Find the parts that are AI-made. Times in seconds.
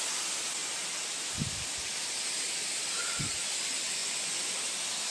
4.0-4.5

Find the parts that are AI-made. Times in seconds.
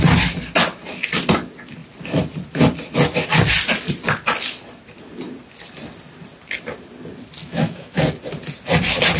7.4-8.0